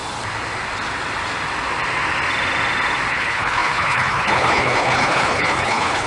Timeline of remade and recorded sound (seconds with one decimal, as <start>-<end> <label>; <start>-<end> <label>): 0.0-3.1 recorded; 3.1-6.1 remade